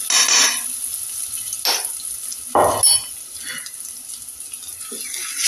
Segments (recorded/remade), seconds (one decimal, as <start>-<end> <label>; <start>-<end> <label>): 0.0-4.3 recorded; 4.3-4.8 remade; 4.8-5.5 recorded